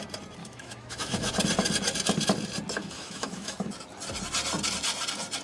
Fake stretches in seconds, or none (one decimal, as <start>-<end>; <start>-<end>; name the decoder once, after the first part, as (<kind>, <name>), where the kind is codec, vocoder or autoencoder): 0.4-1.3 (autoencoder, DAC-VAE); 2.8-3.7